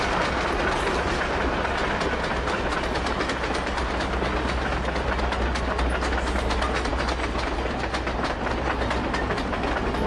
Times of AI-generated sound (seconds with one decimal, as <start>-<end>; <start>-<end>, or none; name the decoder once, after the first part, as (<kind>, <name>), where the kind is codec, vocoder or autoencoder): none